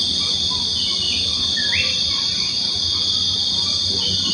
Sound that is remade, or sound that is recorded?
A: recorded